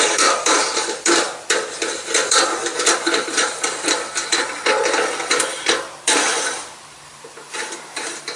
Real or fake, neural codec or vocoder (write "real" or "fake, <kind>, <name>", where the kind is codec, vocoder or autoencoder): fake, vocoder, BigVGAN v2